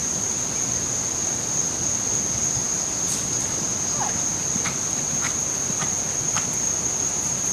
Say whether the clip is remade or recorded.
recorded